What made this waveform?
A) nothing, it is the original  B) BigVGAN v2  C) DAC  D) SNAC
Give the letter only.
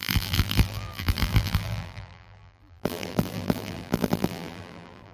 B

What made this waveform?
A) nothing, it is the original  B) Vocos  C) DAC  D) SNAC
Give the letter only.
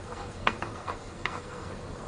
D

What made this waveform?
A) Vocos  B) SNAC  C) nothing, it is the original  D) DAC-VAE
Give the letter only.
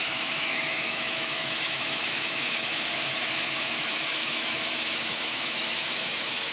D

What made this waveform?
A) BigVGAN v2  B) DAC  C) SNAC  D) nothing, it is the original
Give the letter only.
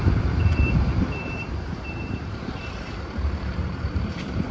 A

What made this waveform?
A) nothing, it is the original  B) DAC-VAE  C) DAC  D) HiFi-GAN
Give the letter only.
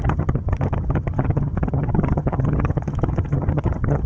D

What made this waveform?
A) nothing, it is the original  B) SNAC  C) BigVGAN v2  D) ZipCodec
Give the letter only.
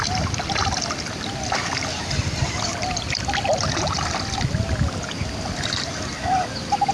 A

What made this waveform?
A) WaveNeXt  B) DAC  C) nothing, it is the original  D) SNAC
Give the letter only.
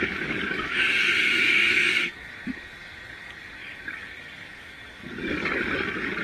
B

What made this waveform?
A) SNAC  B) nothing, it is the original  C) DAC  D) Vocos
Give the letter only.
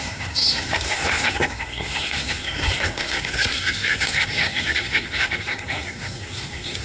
A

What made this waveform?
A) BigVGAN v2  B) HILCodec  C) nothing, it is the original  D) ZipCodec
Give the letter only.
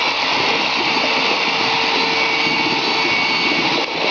C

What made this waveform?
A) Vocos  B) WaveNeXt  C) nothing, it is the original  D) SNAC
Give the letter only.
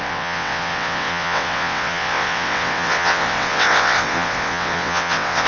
B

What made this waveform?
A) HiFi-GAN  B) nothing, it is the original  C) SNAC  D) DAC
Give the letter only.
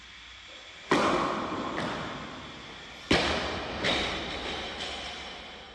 B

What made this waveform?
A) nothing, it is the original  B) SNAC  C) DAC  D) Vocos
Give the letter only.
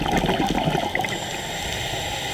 A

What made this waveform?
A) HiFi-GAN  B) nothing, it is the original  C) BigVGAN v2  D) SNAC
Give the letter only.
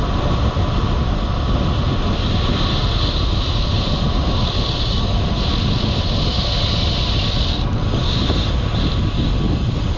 B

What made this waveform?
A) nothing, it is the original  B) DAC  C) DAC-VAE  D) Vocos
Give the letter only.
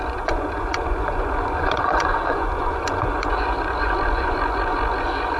D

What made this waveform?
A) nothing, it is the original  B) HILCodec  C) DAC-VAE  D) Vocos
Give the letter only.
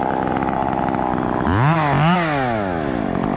A